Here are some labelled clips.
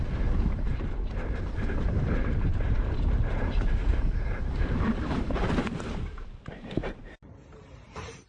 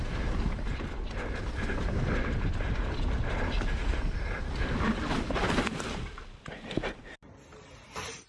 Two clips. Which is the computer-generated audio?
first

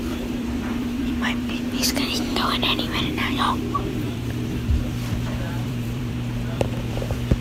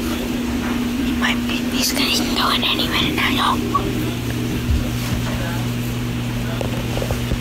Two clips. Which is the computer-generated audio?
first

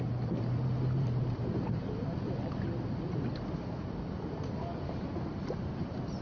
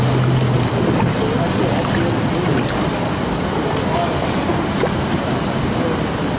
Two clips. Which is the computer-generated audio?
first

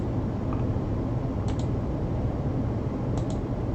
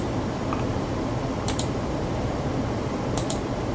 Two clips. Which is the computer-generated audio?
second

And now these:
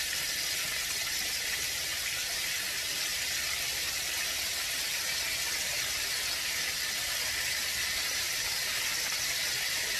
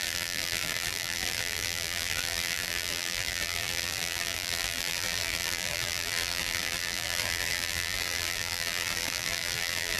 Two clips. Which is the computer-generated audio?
second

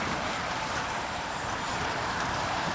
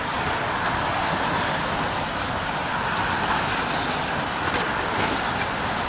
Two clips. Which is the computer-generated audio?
first